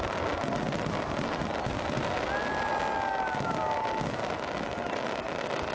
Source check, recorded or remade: recorded